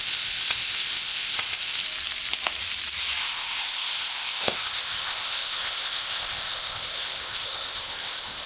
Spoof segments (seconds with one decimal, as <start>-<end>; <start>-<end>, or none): 0.0-1.8; 3.2-8.5